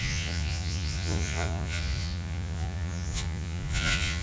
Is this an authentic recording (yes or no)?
no